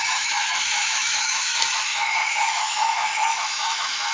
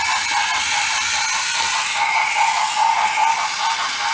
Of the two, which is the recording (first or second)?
second